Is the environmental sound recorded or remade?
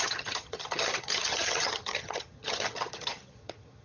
remade